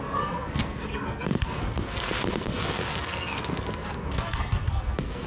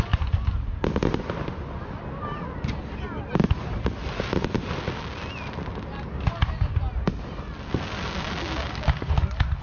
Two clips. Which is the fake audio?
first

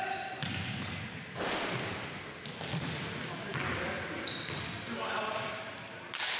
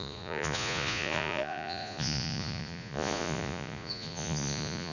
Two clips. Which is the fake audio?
second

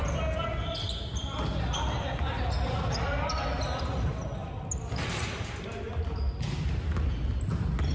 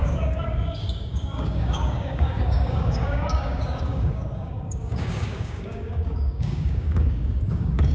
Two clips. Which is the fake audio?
second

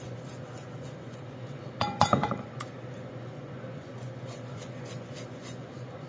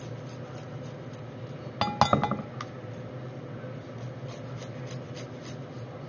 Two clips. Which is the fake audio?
first